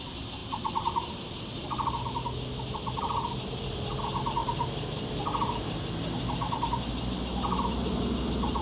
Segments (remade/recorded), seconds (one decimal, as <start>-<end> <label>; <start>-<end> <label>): 0.0-8.6 recorded

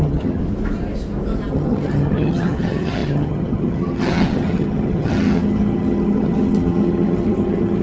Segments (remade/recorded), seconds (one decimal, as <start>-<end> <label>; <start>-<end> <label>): 0.0-0.4 remade; 0.4-1.5 recorded; 1.5-7.8 remade

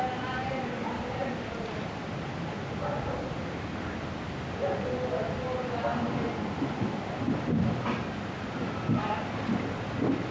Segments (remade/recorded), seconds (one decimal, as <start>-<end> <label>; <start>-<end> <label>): 0.0-10.3 recorded

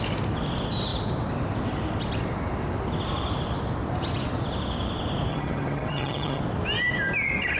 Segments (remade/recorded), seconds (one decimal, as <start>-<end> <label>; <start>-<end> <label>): 0.0-5.3 recorded; 5.3-6.4 remade; 6.4-7.6 recorded

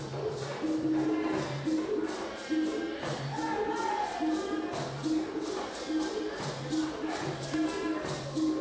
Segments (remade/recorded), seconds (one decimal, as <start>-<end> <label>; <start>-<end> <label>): 0.0-8.6 recorded